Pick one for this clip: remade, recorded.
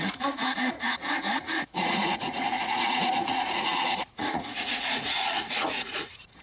remade